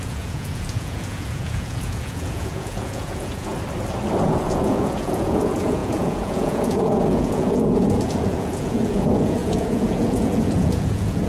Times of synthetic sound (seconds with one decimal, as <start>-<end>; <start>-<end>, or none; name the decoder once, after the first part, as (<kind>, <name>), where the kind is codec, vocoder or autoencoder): 0.0-3.5 (vocoder, Vocos); 4.2-11.3